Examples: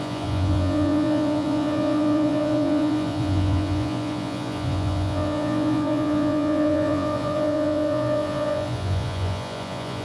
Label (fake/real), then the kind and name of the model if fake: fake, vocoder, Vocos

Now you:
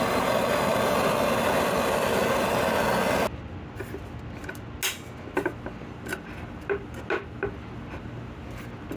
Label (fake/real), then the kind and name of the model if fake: real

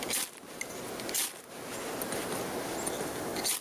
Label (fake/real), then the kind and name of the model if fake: real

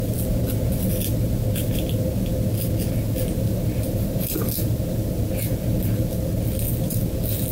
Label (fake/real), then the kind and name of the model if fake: real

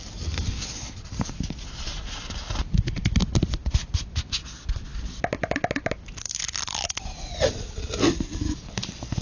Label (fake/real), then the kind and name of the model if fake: real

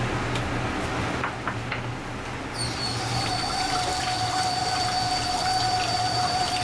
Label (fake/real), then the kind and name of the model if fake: real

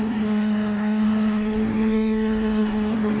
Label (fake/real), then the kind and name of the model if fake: fake, codec, SNAC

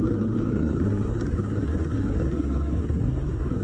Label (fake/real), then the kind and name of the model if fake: fake, codec, SNAC